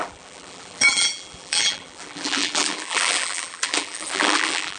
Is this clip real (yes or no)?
no